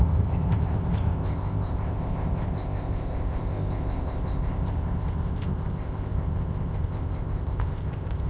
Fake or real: fake